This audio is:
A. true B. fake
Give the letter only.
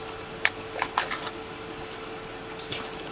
A